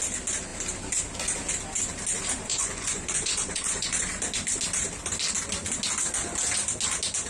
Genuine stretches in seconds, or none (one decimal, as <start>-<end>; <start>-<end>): 0.0-2.5; 4.2-7.3